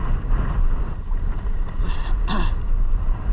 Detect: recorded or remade remade